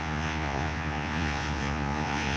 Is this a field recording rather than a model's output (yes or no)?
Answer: no